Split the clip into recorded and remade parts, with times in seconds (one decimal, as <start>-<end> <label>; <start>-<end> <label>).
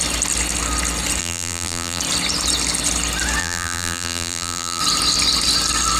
0.0-1.2 recorded; 1.2-2.0 remade; 2.0-3.4 recorded; 3.4-4.8 remade; 4.8-6.0 recorded